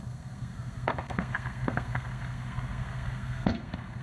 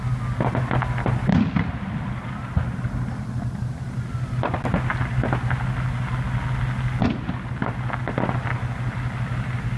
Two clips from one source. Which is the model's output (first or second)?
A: first